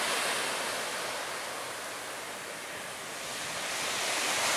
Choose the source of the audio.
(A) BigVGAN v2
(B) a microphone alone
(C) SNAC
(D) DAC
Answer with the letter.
B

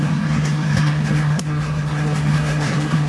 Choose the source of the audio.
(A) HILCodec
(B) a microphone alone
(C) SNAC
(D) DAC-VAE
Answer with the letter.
C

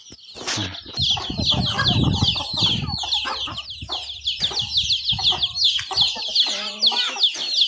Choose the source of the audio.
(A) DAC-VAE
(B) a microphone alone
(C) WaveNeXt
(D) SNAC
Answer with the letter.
B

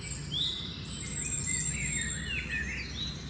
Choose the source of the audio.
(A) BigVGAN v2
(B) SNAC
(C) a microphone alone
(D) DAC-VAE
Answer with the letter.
C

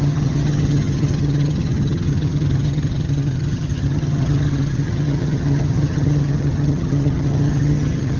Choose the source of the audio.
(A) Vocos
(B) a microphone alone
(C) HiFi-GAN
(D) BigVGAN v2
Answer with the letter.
C